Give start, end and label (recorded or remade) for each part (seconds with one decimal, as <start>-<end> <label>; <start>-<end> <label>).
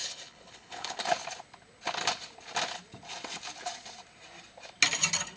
0.0-1.0 remade; 1.0-5.4 recorded